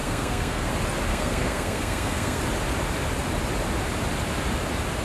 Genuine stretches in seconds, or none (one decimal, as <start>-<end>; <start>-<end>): 0.7-1.1; 2.4-5.0